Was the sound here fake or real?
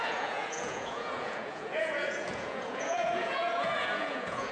fake